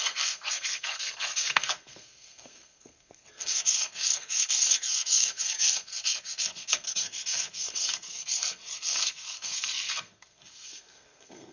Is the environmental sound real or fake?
fake